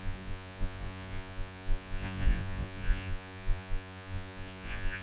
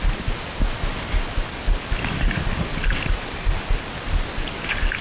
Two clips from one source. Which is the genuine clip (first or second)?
second